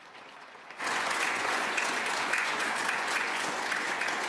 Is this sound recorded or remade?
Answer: remade